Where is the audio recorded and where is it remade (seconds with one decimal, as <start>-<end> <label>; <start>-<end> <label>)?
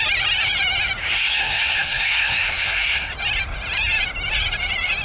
0.0-1.0 recorded; 1.0-3.1 remade; 3.1-5.0 recorded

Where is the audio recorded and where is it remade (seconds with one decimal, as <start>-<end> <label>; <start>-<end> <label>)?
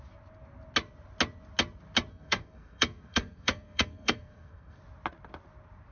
0.0-2.1 recorded; 2.1-4.8 remade; 4.8-5.9 recorded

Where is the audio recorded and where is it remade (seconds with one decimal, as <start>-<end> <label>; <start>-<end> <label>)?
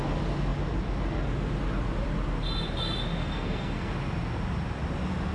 0.0-3.2 recorded; 3.2-3.9 remade; 3.9-5.3 recorded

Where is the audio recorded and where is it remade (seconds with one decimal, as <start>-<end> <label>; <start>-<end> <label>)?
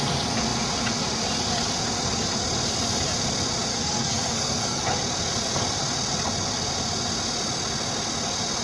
0.0-3.7 recorded; 3.7-4.8 remade; 4.8-8.6 recorded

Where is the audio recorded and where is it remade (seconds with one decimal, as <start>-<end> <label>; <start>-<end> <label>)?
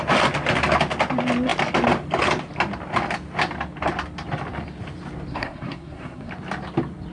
0.0-5.3 recorded; 5.3-6.3 remade; 6.3-7.1 recorded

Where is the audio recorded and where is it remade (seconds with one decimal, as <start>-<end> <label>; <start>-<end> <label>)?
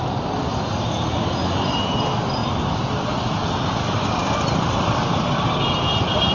0.0-6.3 recorded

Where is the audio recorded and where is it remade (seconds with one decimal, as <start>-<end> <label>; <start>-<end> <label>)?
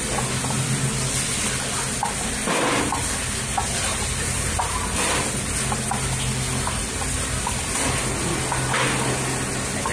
0.0-9.9 recorded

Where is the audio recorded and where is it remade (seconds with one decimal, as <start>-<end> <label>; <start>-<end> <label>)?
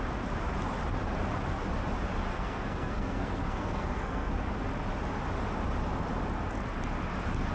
0.0-2.3 recorded; 2.3-4.3 remade; 4.3-7.5 recorded